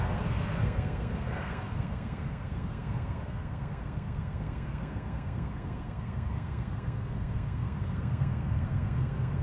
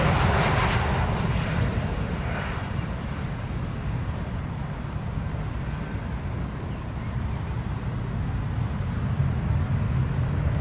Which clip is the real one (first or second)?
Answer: second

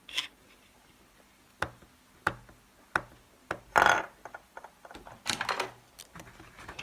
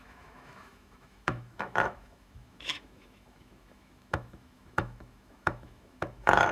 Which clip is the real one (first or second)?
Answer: first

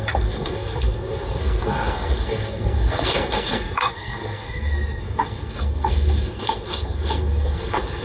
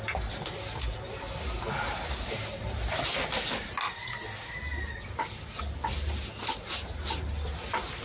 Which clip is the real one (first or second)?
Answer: second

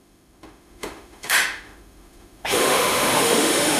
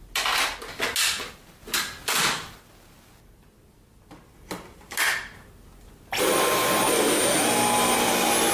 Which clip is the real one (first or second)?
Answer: second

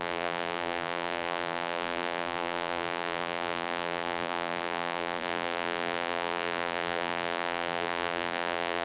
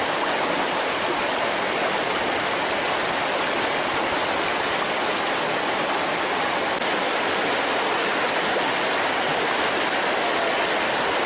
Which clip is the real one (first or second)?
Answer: second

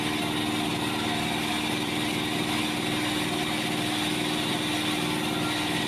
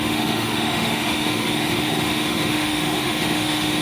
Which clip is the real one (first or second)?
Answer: first